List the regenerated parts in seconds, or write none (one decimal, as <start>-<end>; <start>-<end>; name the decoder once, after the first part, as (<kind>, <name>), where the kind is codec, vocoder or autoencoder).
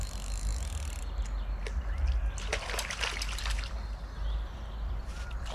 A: none